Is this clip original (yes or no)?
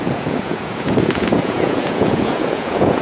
no